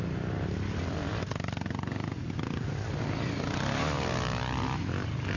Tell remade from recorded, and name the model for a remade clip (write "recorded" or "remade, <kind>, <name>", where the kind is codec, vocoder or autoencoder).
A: recorded